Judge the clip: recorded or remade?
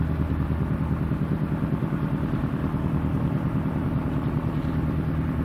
recorded